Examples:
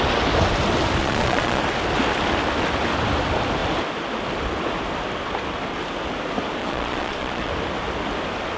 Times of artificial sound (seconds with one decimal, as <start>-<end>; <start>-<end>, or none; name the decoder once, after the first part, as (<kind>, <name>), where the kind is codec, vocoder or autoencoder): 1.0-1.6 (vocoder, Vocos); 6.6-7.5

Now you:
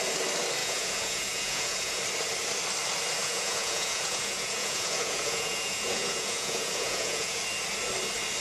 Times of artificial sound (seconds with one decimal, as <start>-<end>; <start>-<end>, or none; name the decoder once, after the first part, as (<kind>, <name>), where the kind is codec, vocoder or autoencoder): 0.6-2.0 (vocoder, Vocos); 3.2-7.4

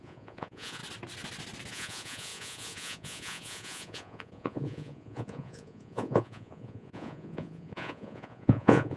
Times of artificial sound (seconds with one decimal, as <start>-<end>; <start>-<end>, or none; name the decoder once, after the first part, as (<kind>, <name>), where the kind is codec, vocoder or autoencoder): 0.0-0.8 (vocoder, Vocos); 1.7-9.0

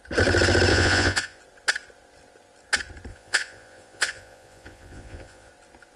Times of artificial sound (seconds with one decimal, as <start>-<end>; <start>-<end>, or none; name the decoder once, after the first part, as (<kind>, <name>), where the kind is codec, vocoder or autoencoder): 0.7-1.4 (vocoder, Vocos); 3.1-5.5

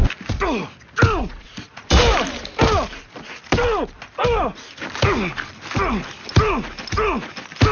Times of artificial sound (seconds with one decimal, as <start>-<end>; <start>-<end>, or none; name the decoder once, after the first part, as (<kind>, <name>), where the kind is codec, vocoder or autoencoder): 1.2-1.8 (vocoder, Vocos)

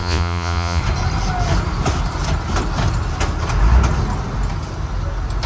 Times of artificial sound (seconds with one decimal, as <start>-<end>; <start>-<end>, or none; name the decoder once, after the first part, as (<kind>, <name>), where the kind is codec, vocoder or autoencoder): 0.0-0.8 (vocoder, Vocos)

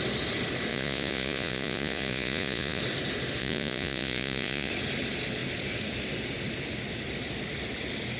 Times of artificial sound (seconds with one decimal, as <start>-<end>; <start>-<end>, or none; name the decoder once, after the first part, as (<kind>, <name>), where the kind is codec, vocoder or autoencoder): 0.7-2.8 (vocoder, Vocos); 3.4-4.7

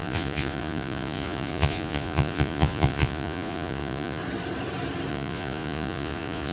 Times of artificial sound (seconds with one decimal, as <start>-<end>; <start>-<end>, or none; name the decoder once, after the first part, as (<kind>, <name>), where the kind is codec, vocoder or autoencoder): 0.0-4.2 (vocoder, Vocos); 5.1-6.5